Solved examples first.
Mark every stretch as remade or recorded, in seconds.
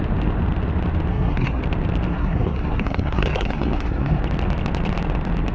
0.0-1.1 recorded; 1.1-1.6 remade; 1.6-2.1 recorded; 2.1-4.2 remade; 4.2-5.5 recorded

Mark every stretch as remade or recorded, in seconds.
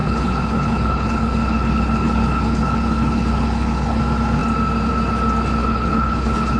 0.0-4.0 remade; 4.0-5.6 recorded; 5.6-6.6 remade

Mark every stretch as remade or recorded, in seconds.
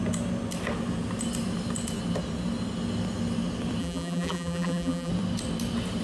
0.0-3.8 recorded; 3.8-5.1 remade; 5.1-6.0 recorded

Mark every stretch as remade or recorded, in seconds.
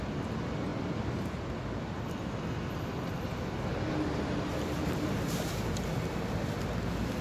0.0-4.5 recorded; 4.5-6.2 remade; 6.2-7.2 recorded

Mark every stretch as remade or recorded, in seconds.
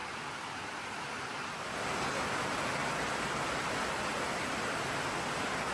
0.0-1.9 remade; 1.9-2.8 recorded; 2.8-3.4 remade; 3.4-5.7 recorded